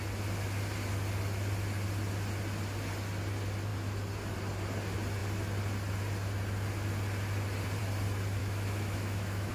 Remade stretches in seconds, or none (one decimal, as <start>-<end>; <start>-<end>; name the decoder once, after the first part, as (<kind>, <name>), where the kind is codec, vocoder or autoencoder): 8.4-9.5 (autoencoder, DAC-VAE)